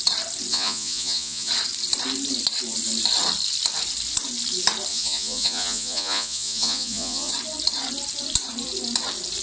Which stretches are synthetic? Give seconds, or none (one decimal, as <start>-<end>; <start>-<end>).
0.5-1.5; 4.9-7.3